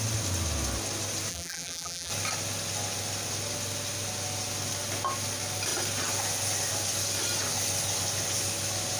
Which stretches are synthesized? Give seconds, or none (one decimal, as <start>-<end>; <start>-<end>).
1.3-2.1